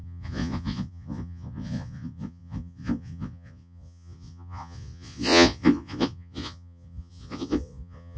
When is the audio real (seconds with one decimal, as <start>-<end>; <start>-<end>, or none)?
none